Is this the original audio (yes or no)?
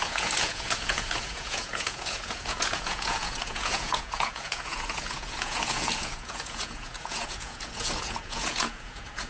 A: no